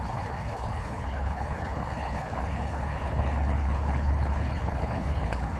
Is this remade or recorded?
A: remade